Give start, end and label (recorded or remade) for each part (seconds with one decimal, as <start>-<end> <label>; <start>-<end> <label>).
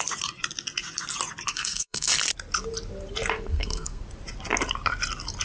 0.0-1.5 recorded; 1.5-2.1 remade; 2.1-3.5 recorded; 3.5-4.0 remade; 4.0-5.4 recorded